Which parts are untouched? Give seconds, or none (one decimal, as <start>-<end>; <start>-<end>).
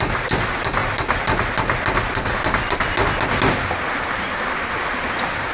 0.0-5.5